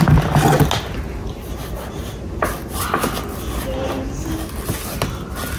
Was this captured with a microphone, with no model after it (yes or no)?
yes